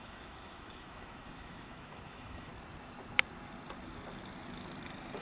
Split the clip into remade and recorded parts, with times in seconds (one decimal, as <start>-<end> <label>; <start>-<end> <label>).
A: 0.0-2.5 remade; 2.5-5.2 recorded